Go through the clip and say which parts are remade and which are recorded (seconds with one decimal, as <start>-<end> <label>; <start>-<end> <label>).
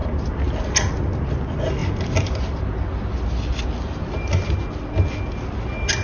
0.0-6.0 recorded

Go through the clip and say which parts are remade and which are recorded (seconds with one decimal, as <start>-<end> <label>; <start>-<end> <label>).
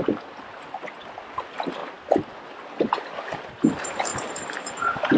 0.0-4.1 recorded; 4.1-4.7 remade; 4.7-5.2 recorded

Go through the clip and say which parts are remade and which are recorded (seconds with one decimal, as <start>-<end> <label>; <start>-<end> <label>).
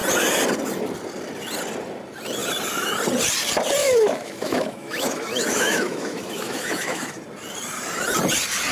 0.0-3.8 recorded; 3.8-7.2 remade; 7.2-8.7 recorded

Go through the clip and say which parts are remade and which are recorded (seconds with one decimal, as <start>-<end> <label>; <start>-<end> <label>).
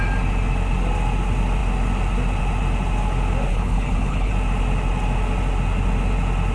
0.0-3.5 recorded; 3.5-4.3 remade; 4.3-6.5 recorded